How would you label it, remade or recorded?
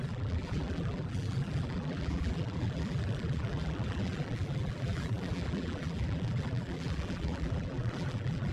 remade